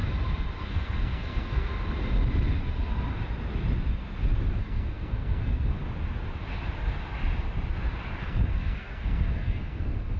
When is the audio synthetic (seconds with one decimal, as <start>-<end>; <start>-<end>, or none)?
0.6-1.7; 4.5-5.8; 8.2-10.2

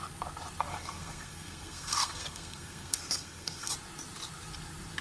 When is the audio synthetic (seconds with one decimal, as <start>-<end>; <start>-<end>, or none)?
0.7-3.7